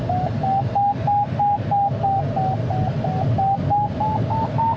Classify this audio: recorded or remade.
recorded